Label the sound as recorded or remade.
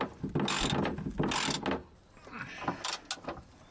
recorded